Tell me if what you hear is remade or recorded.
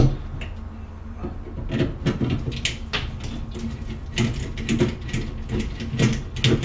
recorded